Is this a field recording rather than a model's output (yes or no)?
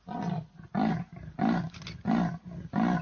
yes